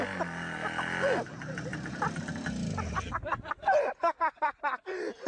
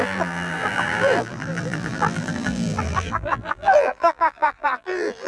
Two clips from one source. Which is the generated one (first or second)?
second